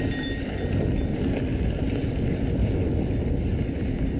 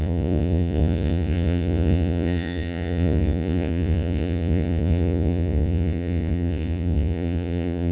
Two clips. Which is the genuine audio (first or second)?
first